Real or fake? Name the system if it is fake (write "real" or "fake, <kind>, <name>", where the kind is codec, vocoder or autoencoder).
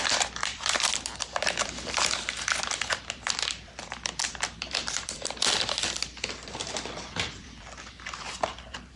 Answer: fake, vocoder, BigVGAN v2